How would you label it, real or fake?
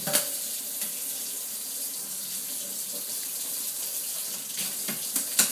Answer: real